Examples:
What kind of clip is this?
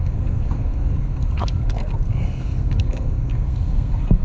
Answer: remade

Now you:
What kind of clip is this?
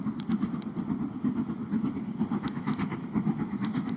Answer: recorded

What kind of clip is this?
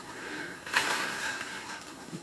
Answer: remade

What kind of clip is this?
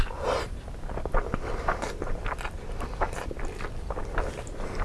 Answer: recorded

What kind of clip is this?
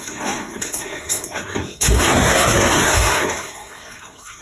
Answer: remade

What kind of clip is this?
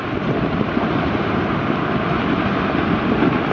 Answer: recorded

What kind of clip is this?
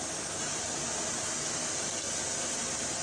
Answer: recorded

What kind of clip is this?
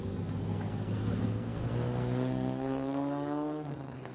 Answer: remade